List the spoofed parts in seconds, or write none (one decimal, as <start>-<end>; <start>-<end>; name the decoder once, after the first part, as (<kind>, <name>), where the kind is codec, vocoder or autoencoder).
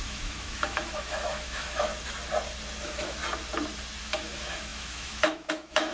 0.0-1.9 (autoencoder, DAC-VAE); 2.8-3.2; 4.0-5.9